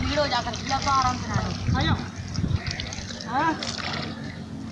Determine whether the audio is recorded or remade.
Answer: recorded